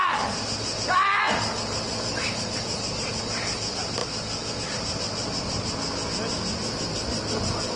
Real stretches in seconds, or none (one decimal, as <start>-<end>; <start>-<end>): 0.0-4.0; 4.7-7.8